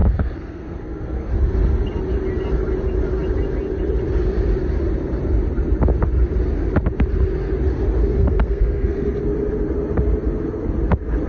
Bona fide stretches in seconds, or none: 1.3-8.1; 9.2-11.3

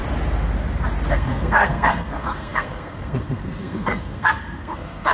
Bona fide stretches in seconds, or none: 0.0-1.1

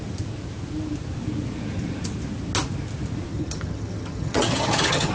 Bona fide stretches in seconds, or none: 0.0-3.3

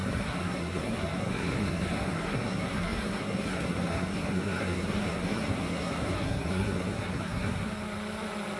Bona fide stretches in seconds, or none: 7.7-8.6

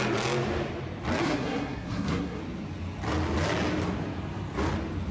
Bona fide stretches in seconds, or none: 0.0-1.2; 2.4-5.1

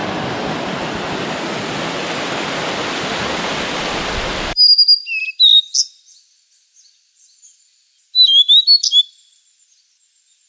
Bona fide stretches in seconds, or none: 0.0-10.5